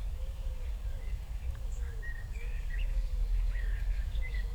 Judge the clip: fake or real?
fake